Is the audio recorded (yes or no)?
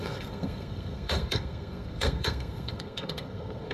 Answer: no